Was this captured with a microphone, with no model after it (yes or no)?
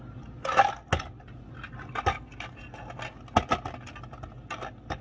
yes